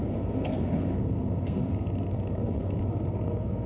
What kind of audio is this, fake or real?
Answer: fake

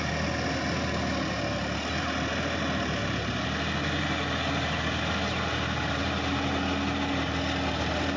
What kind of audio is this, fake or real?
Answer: real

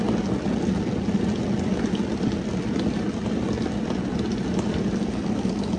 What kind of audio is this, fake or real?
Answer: real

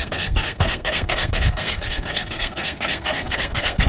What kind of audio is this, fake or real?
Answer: fake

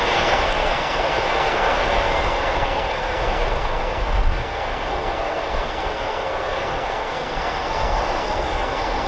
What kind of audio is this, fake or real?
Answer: fake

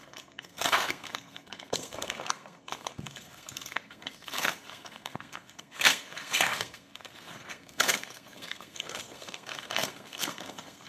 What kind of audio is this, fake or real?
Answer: fake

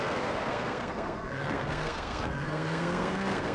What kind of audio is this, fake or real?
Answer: fake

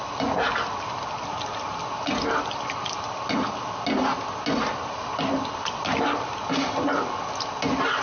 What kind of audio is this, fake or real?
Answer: real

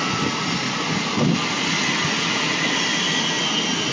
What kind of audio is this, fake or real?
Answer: real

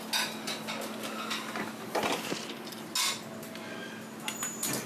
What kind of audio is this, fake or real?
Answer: real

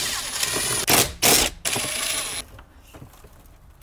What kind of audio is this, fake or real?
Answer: real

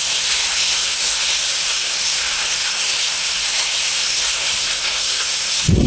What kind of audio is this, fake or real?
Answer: fake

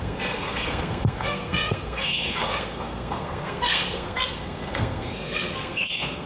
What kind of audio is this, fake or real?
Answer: fake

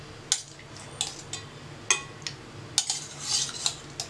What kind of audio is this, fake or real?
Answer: real